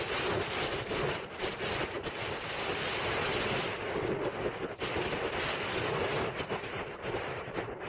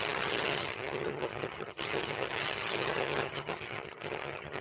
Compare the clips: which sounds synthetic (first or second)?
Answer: second